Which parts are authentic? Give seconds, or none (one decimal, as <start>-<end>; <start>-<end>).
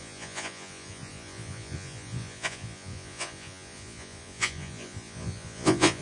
none